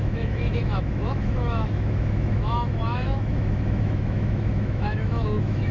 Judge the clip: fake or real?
fake